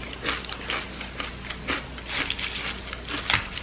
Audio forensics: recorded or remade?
recorded